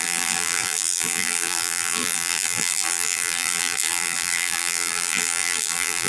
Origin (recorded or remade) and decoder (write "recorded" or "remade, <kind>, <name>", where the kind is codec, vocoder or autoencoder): remade, vocoder, BigVGAN v2